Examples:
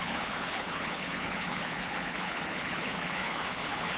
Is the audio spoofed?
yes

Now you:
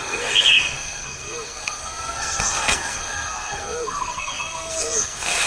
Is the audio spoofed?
yes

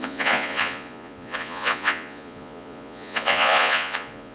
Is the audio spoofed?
yes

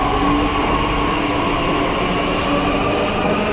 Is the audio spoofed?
no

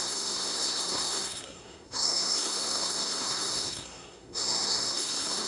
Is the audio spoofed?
yes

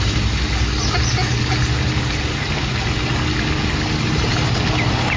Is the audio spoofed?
no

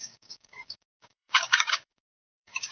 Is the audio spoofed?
yes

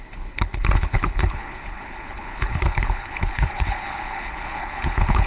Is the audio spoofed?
yes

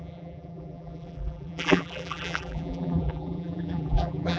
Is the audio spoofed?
yes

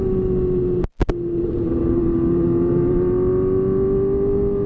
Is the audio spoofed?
no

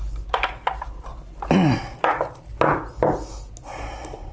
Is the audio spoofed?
no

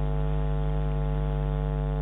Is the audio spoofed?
no